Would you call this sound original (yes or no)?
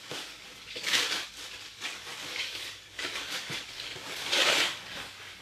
no